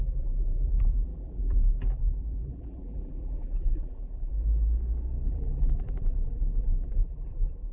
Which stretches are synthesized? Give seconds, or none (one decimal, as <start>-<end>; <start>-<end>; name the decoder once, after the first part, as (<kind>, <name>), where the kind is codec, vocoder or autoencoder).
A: 0.0-4.3 (vocoder, BigVGAN v2); 5.3-7.7